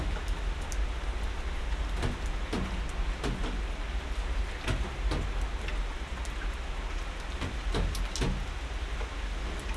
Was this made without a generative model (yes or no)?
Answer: yes